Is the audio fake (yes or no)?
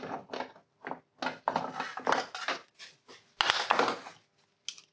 no